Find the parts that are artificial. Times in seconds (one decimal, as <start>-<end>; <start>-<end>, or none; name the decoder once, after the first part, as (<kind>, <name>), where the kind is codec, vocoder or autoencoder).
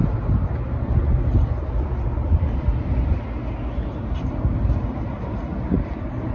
none